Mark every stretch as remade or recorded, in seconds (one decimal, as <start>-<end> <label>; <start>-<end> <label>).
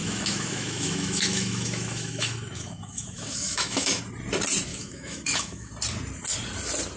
0.0-4.0 remade; 4.0-4.7 recorded; 4.7-5.7 remade; 5.7-7.0 recorded